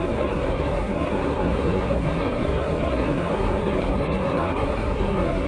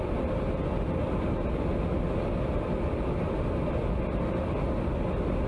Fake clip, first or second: first